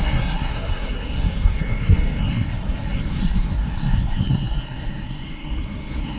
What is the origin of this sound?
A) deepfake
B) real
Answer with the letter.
A